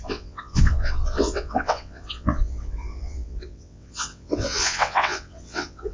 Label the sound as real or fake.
fake